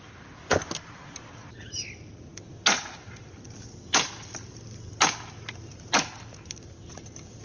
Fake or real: real